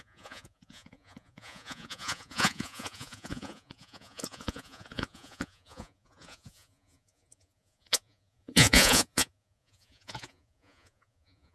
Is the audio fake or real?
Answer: fake